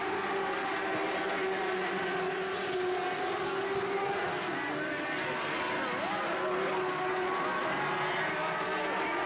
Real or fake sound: real